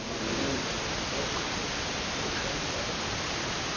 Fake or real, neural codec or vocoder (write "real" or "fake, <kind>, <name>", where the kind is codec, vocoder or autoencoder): real